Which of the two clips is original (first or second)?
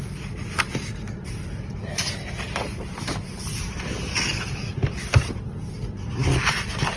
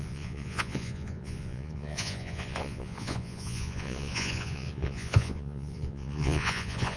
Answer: first